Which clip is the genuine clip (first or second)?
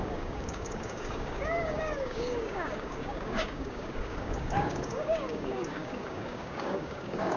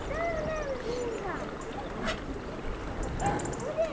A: second